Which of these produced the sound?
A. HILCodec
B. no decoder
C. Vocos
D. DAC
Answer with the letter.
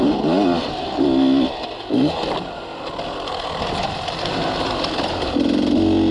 B